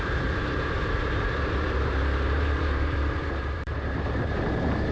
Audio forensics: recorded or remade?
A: remade